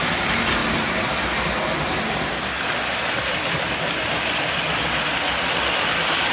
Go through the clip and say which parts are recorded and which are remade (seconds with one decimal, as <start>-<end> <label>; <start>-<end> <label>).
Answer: 0.0-0.6 recorded; 0.6-3.7 remade; 3.7-6.3 recorded